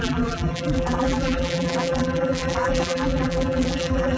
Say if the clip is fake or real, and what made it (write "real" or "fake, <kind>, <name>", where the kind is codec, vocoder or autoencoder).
fake, vocoder, BigVGAN v2